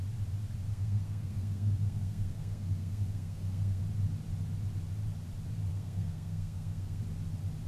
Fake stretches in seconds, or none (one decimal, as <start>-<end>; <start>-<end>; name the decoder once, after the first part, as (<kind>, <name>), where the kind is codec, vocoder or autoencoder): 0.7-3.8 (codec, SNAC); 5.7-7.0